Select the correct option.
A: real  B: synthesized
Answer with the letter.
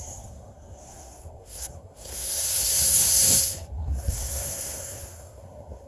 B